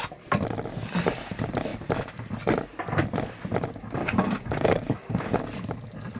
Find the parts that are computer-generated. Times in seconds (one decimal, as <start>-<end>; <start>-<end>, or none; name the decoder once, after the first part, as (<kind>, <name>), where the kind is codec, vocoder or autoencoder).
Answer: 4.0-5.4 (codec, DAC)